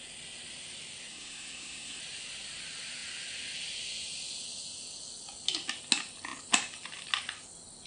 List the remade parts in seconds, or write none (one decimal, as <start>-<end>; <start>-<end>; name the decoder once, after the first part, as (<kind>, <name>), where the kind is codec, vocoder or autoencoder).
1.1-2.0 (codec, SNAC)